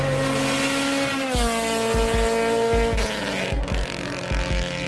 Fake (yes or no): no